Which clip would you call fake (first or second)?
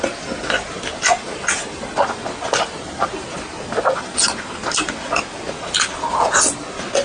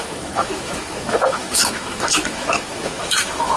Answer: second